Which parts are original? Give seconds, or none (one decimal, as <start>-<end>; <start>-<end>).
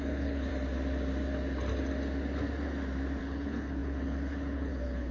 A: 0.5-3.2